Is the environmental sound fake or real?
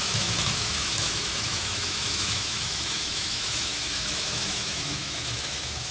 fake